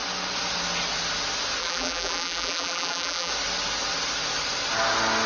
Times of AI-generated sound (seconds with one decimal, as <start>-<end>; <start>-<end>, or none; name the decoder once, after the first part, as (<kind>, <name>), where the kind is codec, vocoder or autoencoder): 1.6-3.3 (vocoder, BigVGAN v2)